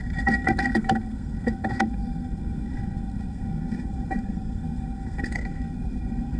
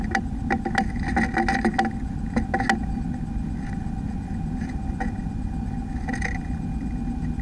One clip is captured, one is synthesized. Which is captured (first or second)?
second